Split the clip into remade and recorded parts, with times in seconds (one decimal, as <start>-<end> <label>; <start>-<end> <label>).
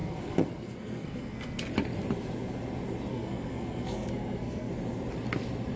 0.0-1.6 remade; 1.6-3.1 recorded; 3.1-4.7 remade; 4.7-5.8 recorded